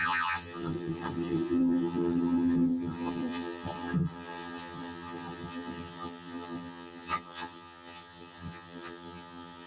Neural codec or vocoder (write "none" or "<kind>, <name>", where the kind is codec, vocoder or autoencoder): vocoder, HiFi-GAN